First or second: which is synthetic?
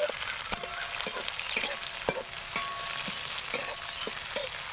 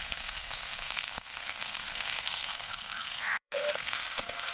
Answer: second